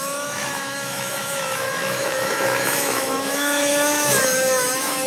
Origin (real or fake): fake